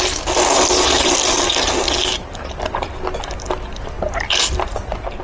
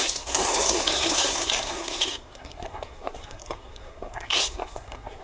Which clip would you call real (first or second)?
first